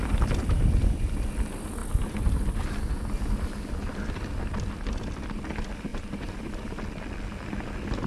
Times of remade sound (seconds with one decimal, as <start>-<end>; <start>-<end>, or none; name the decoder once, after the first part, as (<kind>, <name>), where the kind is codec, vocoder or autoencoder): 5.9-6.8 (vocoder, BigVGAN v2)